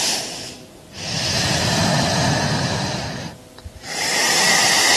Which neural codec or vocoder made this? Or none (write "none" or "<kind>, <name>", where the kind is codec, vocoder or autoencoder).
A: vocoder, BigVGAN v2